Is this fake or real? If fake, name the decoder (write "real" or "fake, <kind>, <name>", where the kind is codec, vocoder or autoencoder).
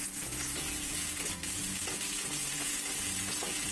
fake, vocoder, Vocos